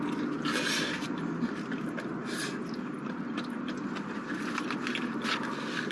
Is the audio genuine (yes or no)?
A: yes